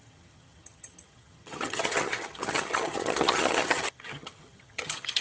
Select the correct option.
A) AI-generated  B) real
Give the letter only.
A